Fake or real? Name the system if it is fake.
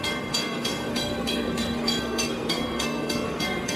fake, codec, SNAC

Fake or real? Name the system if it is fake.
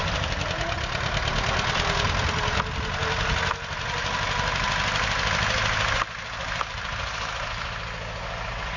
real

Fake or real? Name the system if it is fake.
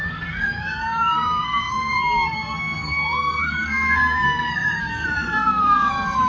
fake, codec, SNAC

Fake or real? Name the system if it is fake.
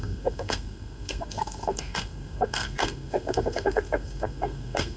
fake, codec, SNAC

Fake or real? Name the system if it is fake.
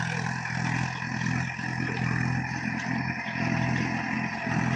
real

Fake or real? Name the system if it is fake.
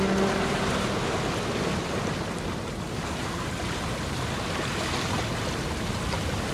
real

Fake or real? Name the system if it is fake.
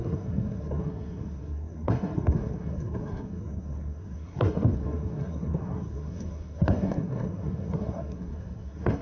fake, codec, SNAC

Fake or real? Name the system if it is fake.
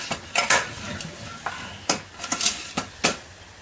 real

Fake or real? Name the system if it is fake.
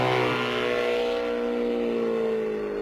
real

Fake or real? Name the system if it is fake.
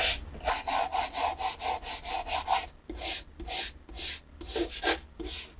real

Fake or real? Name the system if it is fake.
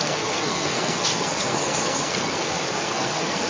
fake, codec, SNAC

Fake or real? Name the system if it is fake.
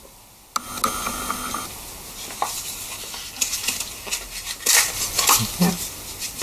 real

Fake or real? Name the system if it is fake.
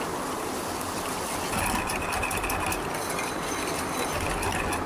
real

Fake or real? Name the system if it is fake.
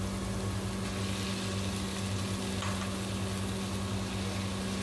real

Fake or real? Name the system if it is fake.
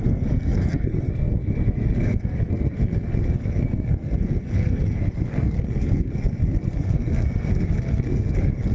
fake, codec, SNAC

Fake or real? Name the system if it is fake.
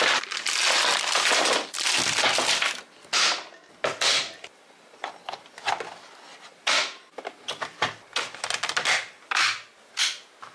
real